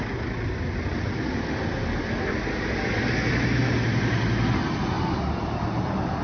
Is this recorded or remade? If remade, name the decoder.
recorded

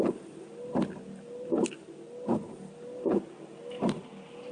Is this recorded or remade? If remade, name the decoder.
recorded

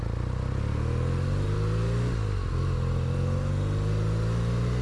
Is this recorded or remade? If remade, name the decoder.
recorded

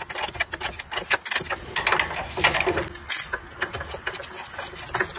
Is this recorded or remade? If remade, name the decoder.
recorded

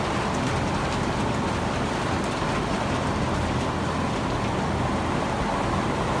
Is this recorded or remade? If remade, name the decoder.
recorded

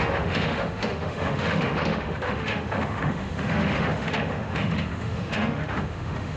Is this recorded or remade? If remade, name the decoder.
remade, autoencoder, DAC-VAE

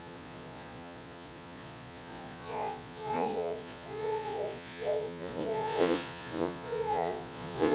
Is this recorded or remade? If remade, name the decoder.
remade, vocoder, Vocos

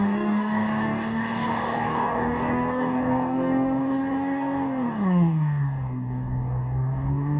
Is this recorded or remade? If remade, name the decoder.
remade, codec, DAC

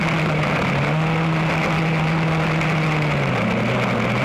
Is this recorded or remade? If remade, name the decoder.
recorded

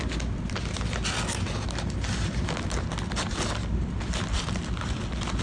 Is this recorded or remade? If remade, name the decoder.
recorded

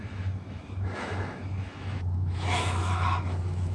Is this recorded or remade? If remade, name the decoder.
remade, autoencoder, DAC-VAE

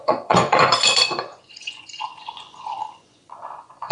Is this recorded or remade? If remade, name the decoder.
remade, vocoder, Vocos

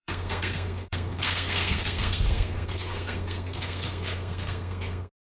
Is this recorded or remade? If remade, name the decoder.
remade, codec, SNAC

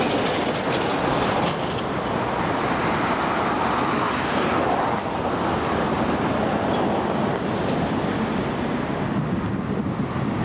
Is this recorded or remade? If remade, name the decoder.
recorded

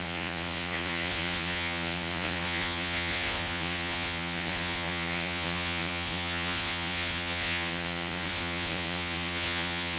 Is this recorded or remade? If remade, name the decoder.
remade, vocoder, Vocos